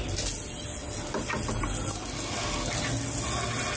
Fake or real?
real